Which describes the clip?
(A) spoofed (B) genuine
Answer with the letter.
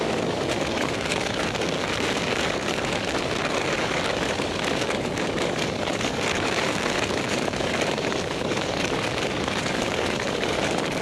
A